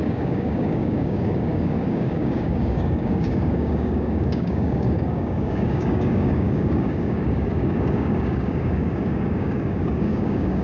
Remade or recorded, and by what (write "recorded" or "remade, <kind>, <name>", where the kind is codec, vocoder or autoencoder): remade, codec, DAC